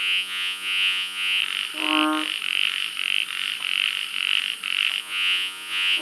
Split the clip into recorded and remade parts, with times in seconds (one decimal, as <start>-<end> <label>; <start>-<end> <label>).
0.0-1.4 remade; 1.4-5.0 recorded; 5.0-6.0 remade